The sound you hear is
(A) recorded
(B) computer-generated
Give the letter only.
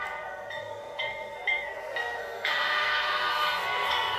B